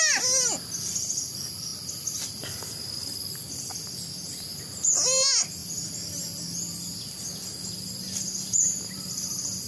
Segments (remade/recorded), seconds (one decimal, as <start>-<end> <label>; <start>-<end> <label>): 0.0-9.7 recorded